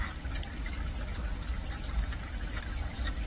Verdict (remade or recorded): remade